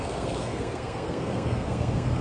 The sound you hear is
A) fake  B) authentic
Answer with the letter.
A